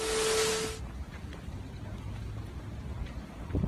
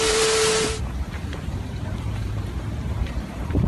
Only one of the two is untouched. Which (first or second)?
first